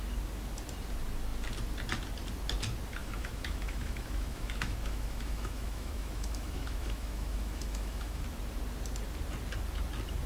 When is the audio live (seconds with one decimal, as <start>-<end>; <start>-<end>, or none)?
0.0-3.0; 8.2-10.3